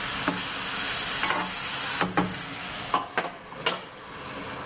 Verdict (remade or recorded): recorded